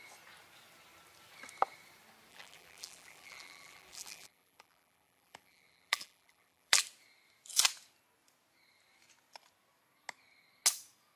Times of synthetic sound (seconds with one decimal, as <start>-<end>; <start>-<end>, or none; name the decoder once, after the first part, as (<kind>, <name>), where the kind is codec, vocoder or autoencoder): 2.3-6.8 (vocoder, BigVGAN v2)